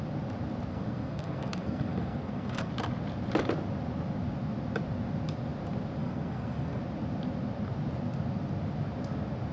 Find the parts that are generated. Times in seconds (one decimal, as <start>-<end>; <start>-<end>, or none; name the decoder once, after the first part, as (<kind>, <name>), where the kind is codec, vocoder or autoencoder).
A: 0.7-2.7 (codec, SNAC); 6.0-6.8